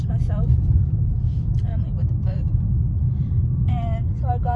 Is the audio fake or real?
real